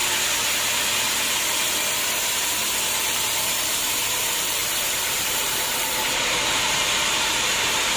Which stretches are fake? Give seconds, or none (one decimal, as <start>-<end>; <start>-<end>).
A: 2.4-8.0